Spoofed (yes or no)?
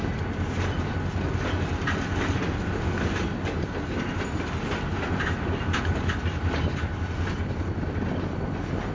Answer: no